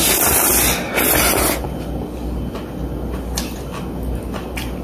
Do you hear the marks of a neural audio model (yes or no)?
no